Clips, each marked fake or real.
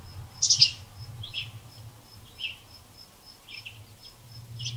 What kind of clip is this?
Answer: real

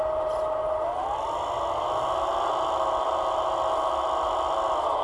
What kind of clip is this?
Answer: real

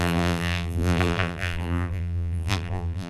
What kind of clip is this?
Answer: fake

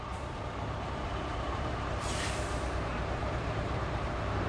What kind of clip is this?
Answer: fake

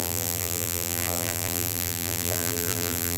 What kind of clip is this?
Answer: fake